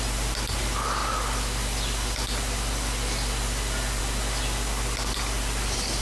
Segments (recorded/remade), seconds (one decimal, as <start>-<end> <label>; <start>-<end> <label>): 0.0-6.0 recorded